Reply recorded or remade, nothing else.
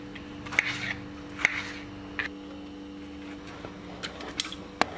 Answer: recorded